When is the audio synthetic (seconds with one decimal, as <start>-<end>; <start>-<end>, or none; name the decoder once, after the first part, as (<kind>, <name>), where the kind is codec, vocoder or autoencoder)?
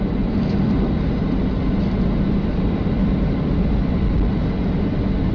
2.5-3.7 (vocoder, BigVGAN v2)